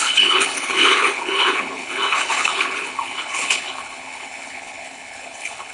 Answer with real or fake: fake